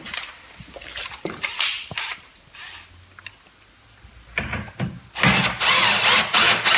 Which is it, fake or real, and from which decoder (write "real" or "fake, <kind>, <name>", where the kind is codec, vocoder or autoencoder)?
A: real